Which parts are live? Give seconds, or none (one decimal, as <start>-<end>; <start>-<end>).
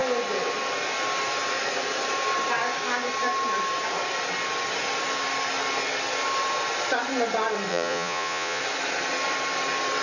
0.0-7.7; 8.6-10.0